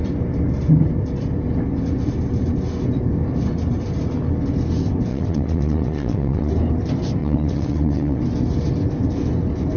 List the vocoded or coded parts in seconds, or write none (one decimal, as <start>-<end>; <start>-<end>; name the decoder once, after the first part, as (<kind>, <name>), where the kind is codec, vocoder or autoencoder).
5.1-6.5 (vocoder, WaveNeXt); 7.2-8.2